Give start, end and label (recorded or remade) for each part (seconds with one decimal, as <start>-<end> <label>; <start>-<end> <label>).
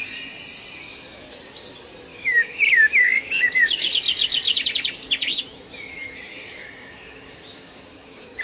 0.0-0.9 recorded; 0.9-1.4 remade; 1.4-2.1 recorded; 2.1-3.9 remade; 3.9-5.3 recorded; 5.3-8.4 remade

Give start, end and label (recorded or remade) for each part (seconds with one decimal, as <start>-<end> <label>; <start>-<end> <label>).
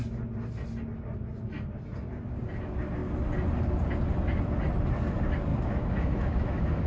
0.0-5.5 recorded; 5.5-6.9 remade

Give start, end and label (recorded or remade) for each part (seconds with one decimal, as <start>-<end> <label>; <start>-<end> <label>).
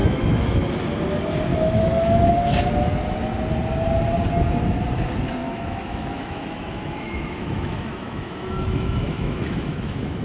0.0-0.7 remade; 0.7-1.5 recorded; 1.5-2.3 remade; 2.3-5.4 recorded; 5.4-10.2 remade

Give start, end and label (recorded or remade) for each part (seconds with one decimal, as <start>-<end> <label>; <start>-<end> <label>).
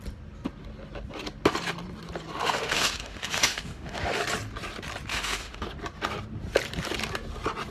0.0-2.4 recorded; 2.4-4.2 remade; 4.2-5.1 recorded; 5.1-5.7 remade; 5.7-7.7 recorded